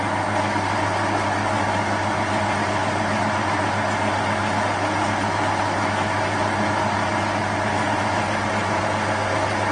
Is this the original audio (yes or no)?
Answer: yes